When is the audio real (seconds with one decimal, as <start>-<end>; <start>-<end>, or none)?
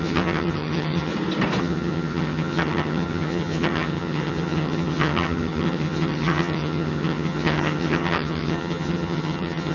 1.1-1.6